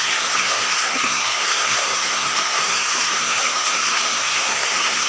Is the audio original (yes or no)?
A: no